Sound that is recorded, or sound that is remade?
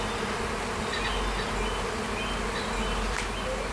recorded